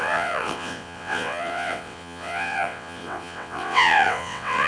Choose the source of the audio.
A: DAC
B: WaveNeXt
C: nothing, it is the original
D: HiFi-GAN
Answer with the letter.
B